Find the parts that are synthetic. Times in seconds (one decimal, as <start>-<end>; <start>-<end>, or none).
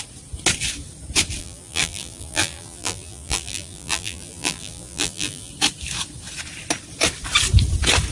1.4-5.5